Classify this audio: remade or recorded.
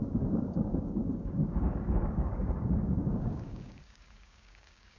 remade